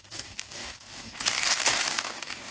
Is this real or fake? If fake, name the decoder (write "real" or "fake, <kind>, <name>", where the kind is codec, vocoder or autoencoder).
fake, codec, DAC